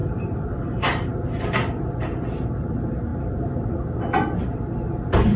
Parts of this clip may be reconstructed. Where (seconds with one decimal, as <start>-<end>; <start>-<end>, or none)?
0.0-1.4; 3.1-4.0